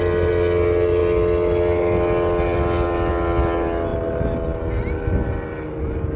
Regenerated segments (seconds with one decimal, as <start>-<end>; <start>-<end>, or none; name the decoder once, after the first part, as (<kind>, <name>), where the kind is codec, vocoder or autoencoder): none